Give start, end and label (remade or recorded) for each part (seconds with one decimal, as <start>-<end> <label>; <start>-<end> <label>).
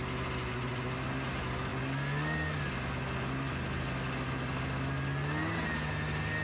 0.0-6.4 recorded